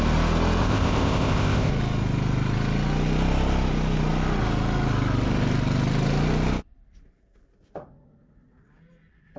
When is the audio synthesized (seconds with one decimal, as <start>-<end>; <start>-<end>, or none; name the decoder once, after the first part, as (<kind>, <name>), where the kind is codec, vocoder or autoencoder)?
0.6-1.7 (codec, ZipCodec)